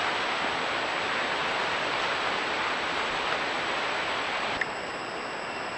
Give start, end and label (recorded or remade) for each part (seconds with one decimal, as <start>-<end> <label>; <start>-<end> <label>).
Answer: 0.0-1.4 recorded; 1.4-4.9 remade; 4.9-5.8 recorded